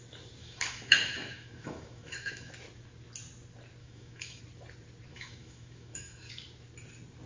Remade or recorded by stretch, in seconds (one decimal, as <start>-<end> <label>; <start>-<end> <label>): 0.0-0.4 recorded; 0.4-2.5 remade; 2.5-3.8 recorded; 3.8-4.4 remade; 4.4-5.1 recorded; 5.1-6.3 remade; 6.3-7.3 recorded